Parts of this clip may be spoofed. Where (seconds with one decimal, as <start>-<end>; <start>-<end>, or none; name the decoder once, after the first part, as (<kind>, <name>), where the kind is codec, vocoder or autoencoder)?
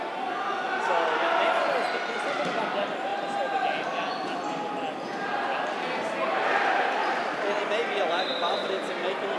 none